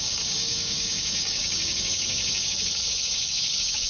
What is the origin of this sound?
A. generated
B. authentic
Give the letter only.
A